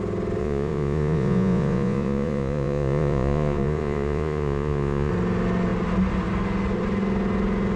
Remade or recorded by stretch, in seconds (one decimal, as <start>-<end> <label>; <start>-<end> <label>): 0.0-0.4 recorded; 0.4-5.1 remade; 5.1-7.8 recorded